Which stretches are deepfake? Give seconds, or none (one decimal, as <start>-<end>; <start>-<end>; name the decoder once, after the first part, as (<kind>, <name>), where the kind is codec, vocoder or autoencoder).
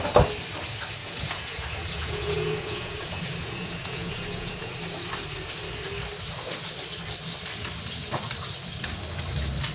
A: 1.0-4.7 (vocoder, Vocos)